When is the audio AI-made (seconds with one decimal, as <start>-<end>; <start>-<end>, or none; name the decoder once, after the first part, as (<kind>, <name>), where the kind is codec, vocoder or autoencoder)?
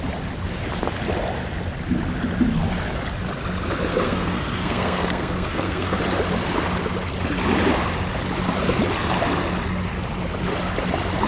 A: 3.9-6.0 (codec, SNAC)